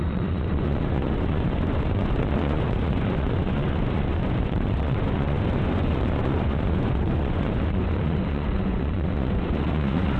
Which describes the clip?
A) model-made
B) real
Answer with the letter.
A